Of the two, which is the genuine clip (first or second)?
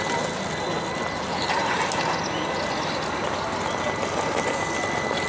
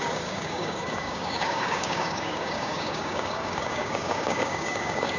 first